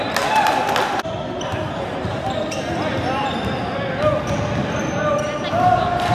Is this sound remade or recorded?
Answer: recorded